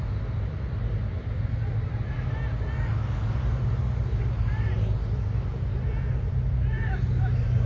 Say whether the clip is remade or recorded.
recorded